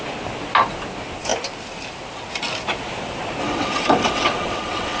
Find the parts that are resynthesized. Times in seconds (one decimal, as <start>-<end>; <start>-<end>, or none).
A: 3.4-5.0